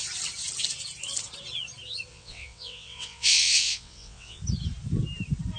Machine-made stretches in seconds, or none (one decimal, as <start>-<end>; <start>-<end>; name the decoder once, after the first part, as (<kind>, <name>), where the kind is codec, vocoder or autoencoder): 2.1-4.4 (vocoder, WaveNeXt)